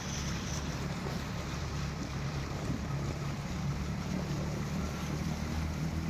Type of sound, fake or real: fake